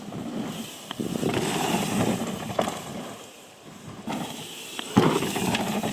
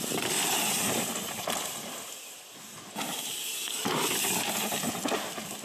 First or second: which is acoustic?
second